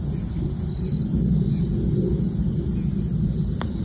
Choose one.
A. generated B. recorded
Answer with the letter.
B